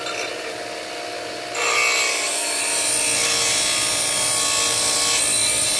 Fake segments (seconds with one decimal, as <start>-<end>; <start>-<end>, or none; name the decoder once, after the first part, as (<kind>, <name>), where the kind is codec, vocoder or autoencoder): 2.1-2.6 (autoencoder, DAC-VAE)